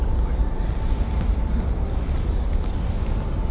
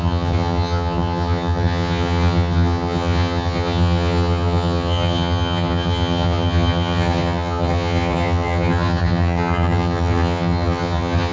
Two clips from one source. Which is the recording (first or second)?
first